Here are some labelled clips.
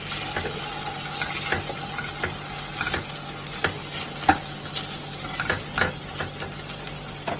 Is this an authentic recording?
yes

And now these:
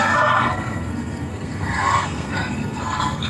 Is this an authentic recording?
no